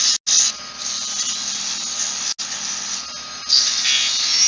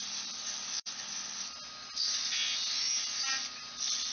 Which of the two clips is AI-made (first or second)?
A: second